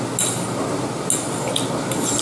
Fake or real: real